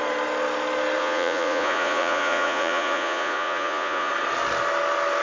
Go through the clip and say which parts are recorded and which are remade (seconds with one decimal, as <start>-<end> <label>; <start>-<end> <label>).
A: 0.0-1.0 recorded; 1.0-4.1 remade; 4.1-5.2 recorded